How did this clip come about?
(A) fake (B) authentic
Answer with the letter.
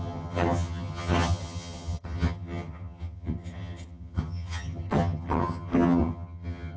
A